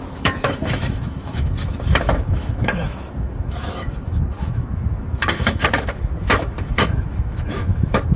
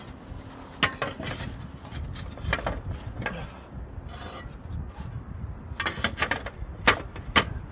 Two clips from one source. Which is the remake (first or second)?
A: first